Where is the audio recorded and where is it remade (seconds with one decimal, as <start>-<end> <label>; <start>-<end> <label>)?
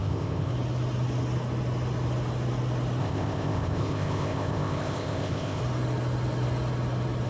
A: 0.0-0.5 remade; 0.5-3.0 recorded; 3.0-5.6 remade; 5.6-7.3 recorded